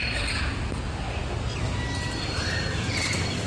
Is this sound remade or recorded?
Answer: recorded